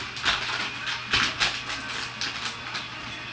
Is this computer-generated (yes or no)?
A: no